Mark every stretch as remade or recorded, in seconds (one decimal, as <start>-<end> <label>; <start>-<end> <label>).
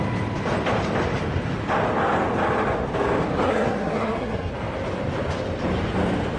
0.0-3.3 recorded; 3.3-4.5 remade; 4.5-6.4 recorded